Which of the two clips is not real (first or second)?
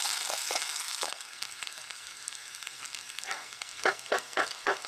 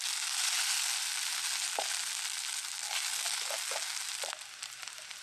first